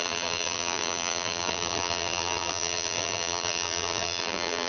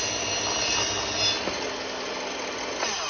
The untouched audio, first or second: second